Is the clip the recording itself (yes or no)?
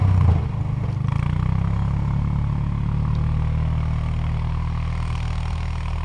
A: yes